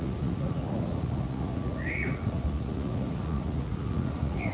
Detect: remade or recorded remade